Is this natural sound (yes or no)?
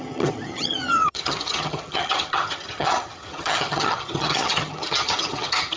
no